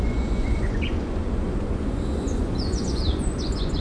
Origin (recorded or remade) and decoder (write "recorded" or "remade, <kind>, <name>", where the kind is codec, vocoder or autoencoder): remade, vocoder, Vocos